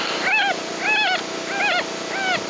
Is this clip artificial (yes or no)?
no